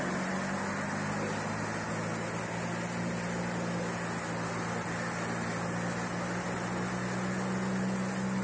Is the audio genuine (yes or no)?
yes